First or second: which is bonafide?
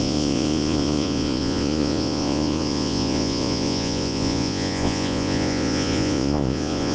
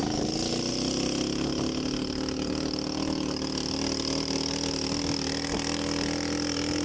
second